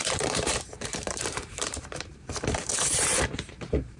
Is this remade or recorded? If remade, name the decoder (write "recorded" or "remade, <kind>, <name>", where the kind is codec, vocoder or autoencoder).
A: remade, vocoder, BigVGAN v2